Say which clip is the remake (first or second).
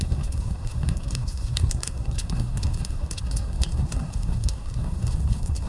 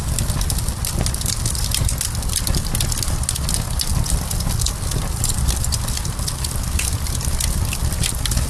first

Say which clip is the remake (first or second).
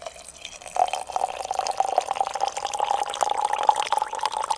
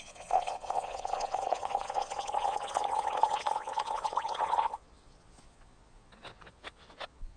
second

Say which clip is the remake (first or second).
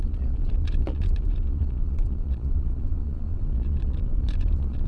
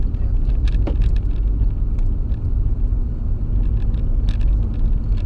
first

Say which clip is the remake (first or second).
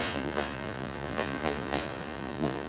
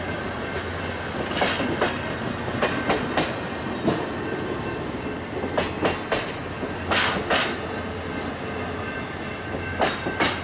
first